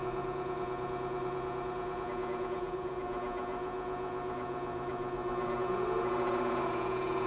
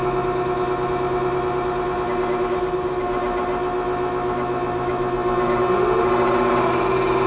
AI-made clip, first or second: first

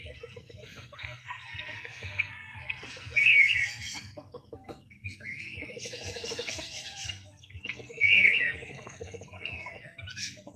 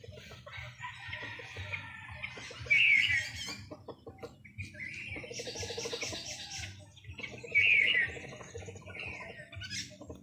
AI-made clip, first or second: first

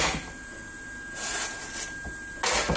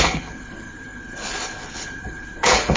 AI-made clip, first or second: second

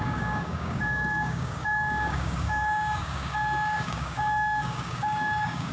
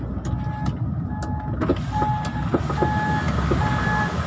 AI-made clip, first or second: first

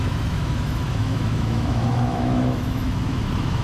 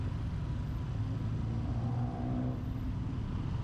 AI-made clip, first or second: first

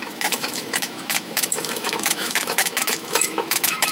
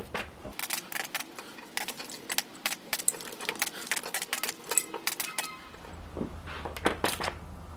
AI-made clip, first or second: first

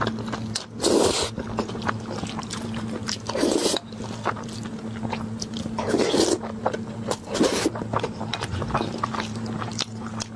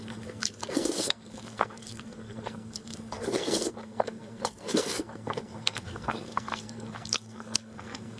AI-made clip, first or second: second